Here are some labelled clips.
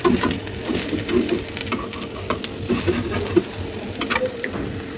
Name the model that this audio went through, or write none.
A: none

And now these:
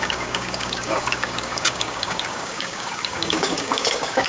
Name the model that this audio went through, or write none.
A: codec, DAC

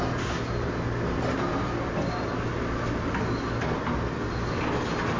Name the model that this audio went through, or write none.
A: none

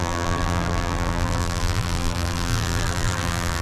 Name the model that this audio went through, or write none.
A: vocoder, BigVGAN v2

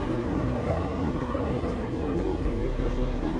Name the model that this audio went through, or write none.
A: codec, SNAC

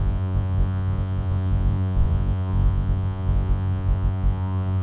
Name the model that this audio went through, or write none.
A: vocoder, Vocos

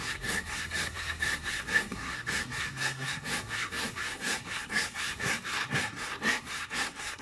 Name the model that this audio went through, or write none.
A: codec, SNAC